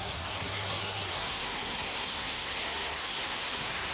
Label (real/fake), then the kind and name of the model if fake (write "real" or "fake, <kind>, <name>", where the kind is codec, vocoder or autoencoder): fake, codec, SNAC